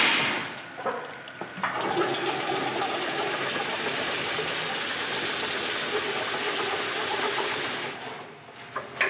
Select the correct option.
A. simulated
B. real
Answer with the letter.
B